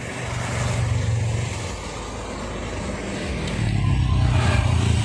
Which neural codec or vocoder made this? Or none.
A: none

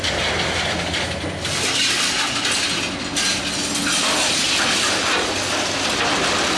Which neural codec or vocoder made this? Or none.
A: none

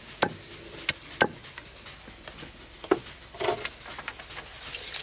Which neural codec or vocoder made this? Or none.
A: none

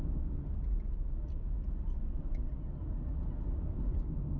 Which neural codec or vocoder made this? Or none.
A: none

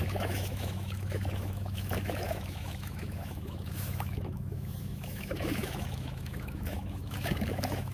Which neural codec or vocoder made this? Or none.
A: autoencoder, DAC-VAE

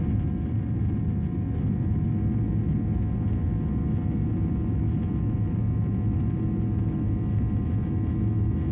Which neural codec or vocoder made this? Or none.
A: none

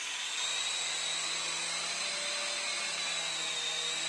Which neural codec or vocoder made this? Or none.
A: none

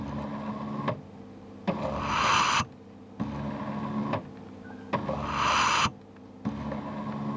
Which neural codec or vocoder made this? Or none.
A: none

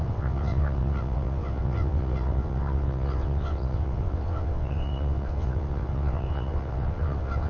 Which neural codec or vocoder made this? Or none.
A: vocoder, WaveNeXt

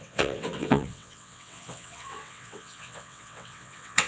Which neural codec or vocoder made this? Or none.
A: vocoder, WaveNeXt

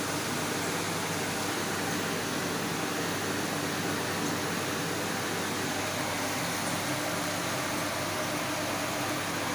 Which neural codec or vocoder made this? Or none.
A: none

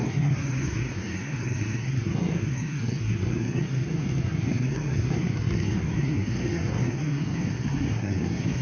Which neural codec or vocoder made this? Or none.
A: codec, SNAC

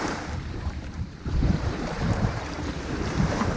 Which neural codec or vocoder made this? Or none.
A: vocoder, BigVGAN v2